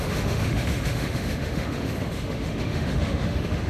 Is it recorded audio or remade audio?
remade